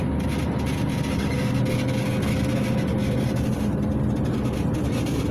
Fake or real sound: real